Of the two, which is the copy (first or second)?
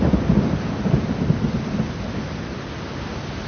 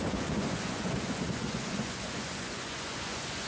second